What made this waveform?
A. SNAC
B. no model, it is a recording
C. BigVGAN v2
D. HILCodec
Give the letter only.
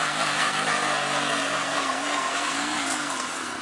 A